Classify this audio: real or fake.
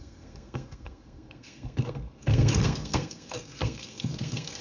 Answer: fake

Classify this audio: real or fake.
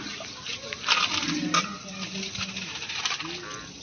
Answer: real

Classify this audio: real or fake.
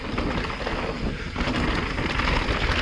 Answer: real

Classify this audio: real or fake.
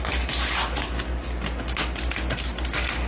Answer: real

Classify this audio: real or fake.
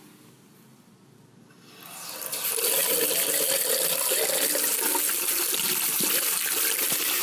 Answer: real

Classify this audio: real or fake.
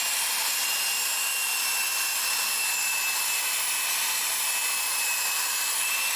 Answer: real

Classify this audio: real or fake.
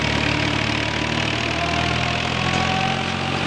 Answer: real